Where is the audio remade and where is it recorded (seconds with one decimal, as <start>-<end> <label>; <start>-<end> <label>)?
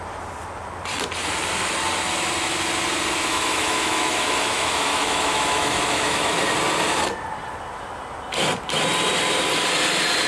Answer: 0.0-3.3 recorded; 3.3-6.4 remade; 6.4-10.3 recorded